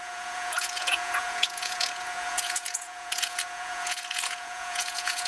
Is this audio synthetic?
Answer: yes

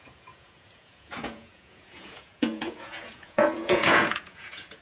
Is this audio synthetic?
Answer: yes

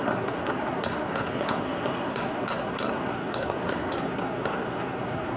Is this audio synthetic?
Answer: yes